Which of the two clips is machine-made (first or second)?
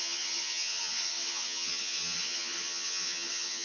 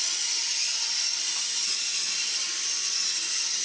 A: first